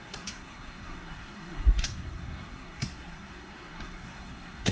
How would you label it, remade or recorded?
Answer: remade